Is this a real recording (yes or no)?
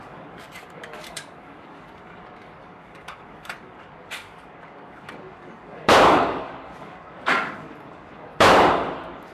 no